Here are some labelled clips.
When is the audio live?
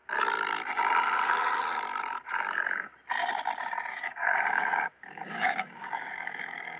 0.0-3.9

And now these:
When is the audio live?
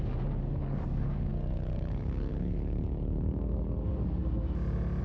4.2-5.0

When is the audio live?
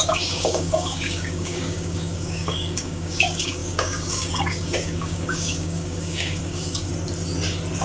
6.9-7.8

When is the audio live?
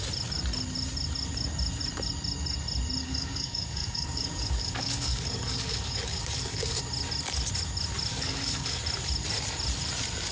0.0-3.0; 6.8-8.1; 8.8-10.3